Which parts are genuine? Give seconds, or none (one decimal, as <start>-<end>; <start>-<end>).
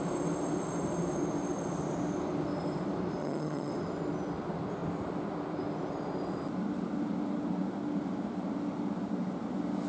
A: 0.0-3.2; 3.7-9.9